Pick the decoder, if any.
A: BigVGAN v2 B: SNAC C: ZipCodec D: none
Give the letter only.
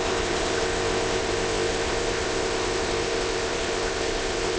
C